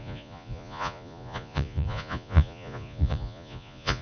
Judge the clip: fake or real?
fake